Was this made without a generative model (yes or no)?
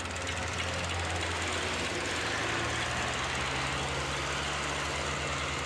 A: yes